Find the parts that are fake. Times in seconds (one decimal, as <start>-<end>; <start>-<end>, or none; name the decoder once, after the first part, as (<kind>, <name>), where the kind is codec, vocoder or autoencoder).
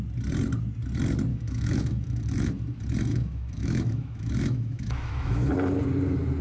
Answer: 1.3-2.5 (autoencoder, DAC-VAE); 3.1-5.5